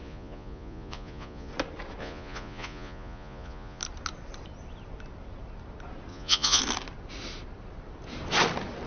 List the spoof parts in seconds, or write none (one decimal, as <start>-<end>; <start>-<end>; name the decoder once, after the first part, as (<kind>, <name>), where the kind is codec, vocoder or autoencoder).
0.0-1.5 (vocoder, Vocos); 2.0-3.8; 6.1-6.6